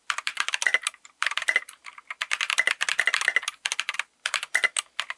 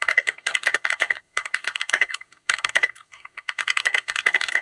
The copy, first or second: second